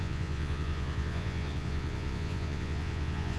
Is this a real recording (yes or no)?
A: no